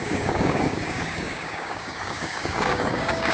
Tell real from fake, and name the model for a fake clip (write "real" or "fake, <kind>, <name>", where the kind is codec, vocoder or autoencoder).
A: fake, codec, DAC